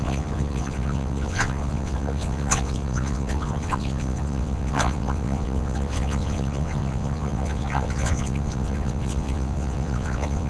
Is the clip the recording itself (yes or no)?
no